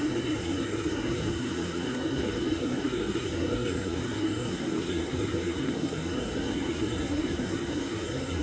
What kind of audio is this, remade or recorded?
remade